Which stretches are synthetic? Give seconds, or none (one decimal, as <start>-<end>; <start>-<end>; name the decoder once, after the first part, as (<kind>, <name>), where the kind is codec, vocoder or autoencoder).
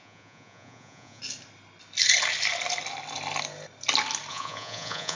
0.0-1.2 (vocoder, Vocos); 4.3-5.2